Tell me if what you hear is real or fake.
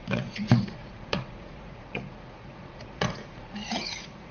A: fake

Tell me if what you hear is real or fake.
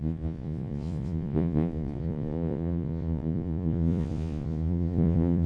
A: fake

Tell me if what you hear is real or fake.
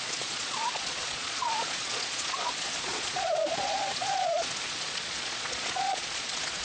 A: fake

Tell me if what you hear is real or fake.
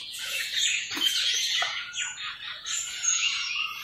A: fake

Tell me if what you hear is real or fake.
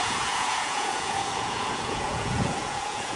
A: fake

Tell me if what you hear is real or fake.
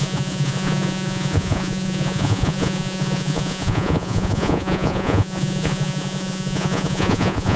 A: fake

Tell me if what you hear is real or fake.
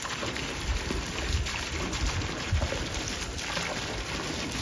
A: real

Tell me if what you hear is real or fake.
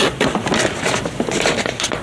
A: real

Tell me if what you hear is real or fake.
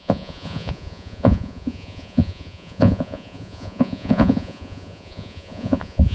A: fake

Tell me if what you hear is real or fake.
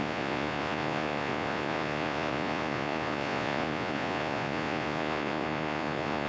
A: fake